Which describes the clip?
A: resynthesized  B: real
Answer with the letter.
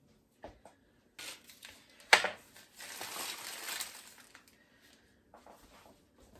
B